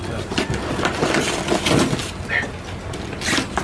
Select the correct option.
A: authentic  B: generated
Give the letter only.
A